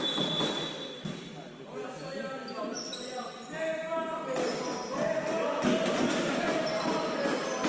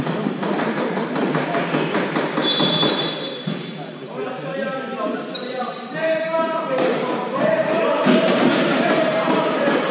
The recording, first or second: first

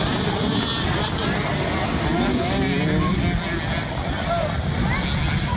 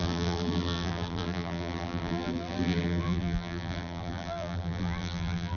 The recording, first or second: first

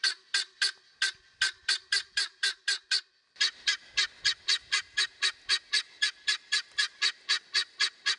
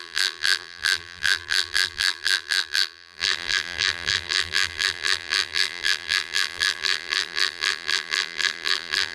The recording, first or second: first